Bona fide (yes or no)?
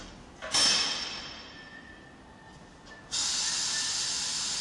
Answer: yes